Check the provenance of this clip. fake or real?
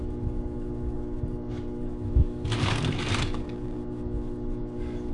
fake